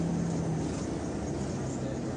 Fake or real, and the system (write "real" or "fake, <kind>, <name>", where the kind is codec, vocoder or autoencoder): real